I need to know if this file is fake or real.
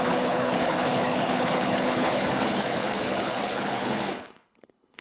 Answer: fake